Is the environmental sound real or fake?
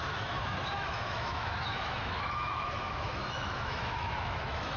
fake